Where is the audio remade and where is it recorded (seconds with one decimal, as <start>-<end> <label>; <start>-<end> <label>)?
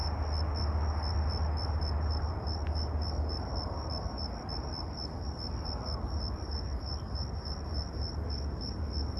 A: 0.0-9.2 recorded